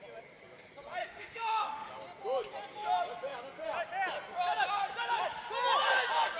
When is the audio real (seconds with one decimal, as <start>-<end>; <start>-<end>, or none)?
0.0-1.0; 1.9-6.4